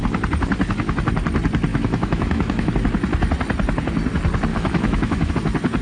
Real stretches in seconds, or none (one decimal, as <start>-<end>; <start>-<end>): 0.0-1.7; 2.7-4.5; 5.3-5.8